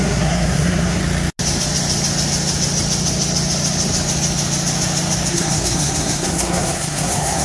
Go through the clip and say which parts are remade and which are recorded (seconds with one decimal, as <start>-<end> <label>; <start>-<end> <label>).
0.0-1.0 remade; 1.0-5.3 recorded; 5.3-7.4 remade